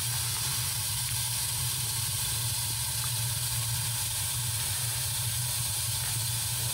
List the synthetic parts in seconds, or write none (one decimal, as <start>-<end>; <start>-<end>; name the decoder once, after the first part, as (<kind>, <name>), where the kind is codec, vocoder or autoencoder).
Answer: 4.9-5.4 (vocoder, BigVGAN v2)